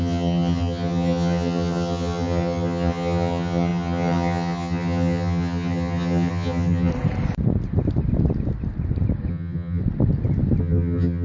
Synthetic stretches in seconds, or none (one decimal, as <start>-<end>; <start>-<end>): 0.0-6.9; 9.3-9.8; 10.6-11.2